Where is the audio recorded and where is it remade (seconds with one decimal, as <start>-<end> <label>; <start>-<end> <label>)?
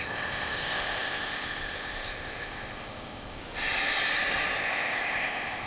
0.0-3.4 remade; 3.4-4.6 recorded; 4.6-5.7 remade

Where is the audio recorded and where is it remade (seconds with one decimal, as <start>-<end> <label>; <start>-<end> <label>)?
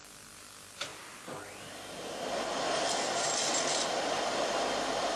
0.0-0.9 remade; 0.9-4.0 recorded; 4.0-5.2 remade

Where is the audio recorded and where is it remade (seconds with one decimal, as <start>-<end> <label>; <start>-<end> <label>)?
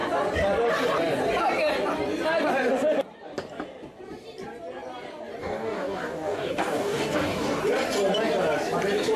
0.0-5.4 recorded; 5.4-7.6 remade; 7.6-9.2 recorded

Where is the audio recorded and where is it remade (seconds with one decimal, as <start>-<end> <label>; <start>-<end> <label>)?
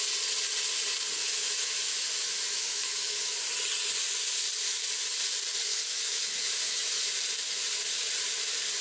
0.0-1.2 recorded; 1.2-3.4 remade; 3.4-5.7 recorded; 5.7-7.1 remade; 7.1-8.8 recorded